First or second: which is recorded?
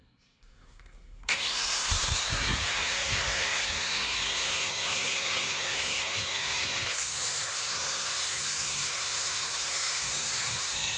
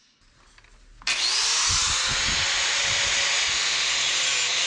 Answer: second